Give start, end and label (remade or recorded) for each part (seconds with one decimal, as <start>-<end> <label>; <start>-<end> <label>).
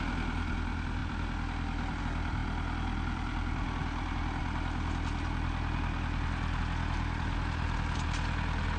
0.0-8.8 recorded